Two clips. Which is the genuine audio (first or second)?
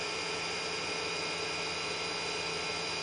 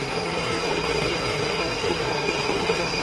first